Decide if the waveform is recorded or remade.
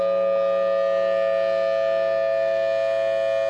recorded